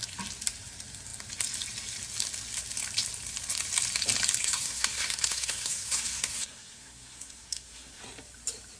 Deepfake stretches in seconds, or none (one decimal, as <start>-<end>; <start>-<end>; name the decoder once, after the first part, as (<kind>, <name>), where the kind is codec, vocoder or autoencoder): 4.4-8.0 (codec, SNAC)